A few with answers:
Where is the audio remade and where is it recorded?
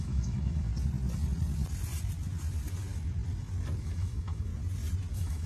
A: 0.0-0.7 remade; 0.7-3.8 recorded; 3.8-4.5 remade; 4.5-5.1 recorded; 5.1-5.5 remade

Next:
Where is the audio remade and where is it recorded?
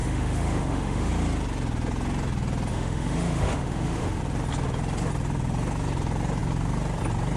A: 0.0-1.1 remade; 1.1-2.7 recorded; 2.7-4.2 remade; 4.2-7.4 recorded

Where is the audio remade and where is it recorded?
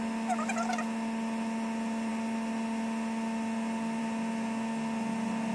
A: 0.0-5.5 recorded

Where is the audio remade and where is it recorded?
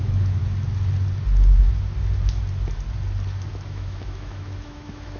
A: 0.0-0.4 remade; 0.4-3.5 recorded; 3.5-5.2 remade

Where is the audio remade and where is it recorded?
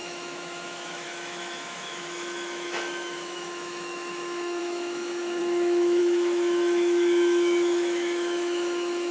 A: 0.0-9.1 remade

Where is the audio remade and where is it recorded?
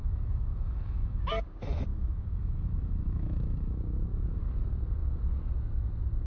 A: 0.0-1.2 remade; 1.2-1.9 recorded; 1.9-3.8 remade; 3.8-6.3 recorded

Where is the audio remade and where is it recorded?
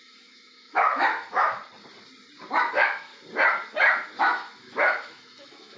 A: 0.0-1.6 remade; 1.6-2.6 recorded; 2.6-3.1 remade; 3.1-4.2 recorded; 4.2-5.8 remade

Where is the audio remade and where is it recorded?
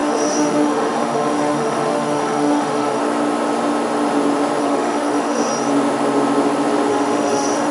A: 0.0-3.0 remade; 3.0-4.6 recorded; 4.6-5.5 remade; 5.5-6.9 recorded; 6.9-7.7 remade